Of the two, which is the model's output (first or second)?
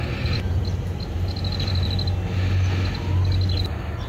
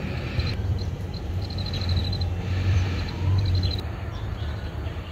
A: second